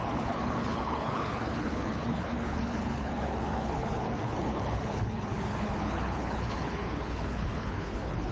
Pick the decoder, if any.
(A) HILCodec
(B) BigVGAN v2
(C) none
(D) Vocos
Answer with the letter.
A